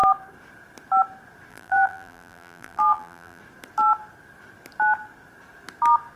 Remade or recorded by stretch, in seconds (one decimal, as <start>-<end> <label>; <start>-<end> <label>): 0.0-1.5 recorded; 1.5-3.4 remade; 3.4-6.2 recorded